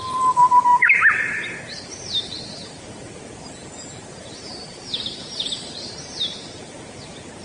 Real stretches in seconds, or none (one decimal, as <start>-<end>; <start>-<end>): none